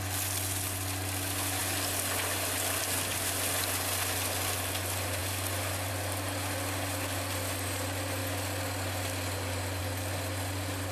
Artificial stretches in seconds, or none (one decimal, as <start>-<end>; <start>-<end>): none